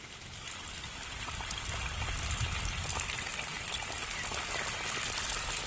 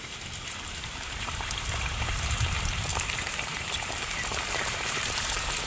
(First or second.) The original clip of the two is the first